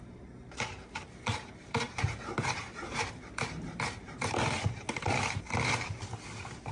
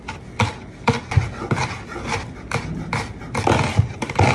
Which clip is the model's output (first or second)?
first